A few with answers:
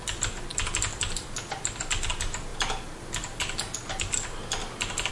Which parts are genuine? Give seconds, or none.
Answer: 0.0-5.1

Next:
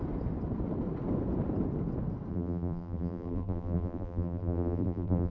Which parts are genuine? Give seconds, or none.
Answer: 0.0-2.3

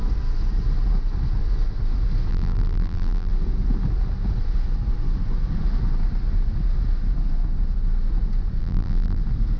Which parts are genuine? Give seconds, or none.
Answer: 0.0-2.3; 3.3-8.6; 9.2-9.6